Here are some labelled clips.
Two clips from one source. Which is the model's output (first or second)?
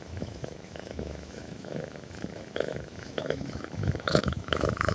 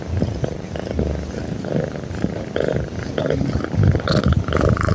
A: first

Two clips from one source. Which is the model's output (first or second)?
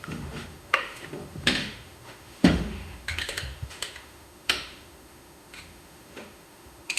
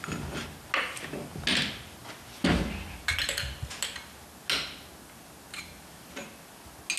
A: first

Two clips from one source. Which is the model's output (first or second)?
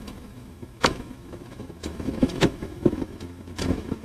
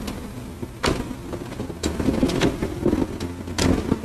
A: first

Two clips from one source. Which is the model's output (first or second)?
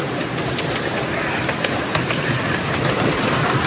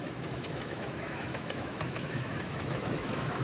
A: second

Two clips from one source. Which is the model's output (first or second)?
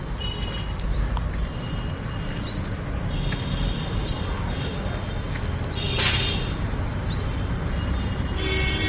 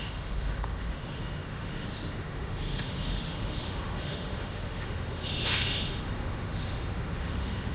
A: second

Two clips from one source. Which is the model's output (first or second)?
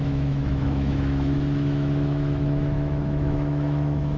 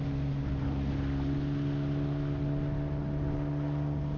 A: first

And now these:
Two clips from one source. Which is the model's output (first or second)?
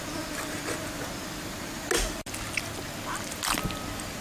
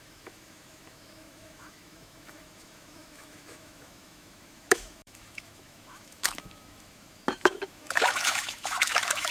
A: second